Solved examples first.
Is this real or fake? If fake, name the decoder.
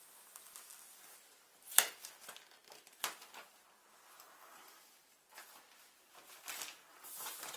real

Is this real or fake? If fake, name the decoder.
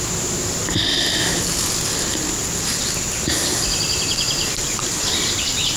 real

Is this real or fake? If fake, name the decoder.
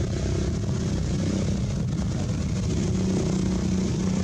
real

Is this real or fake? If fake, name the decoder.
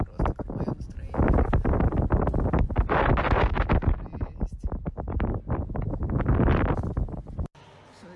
real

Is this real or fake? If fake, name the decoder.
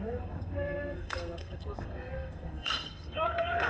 fake, codec, SNAC